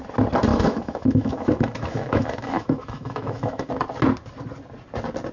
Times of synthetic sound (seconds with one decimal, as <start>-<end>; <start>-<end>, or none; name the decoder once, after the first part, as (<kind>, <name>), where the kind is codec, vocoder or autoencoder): 0.5-3.7 (autoencoder, DAC-VAE)